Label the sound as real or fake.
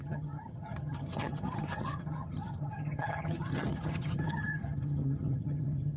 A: fake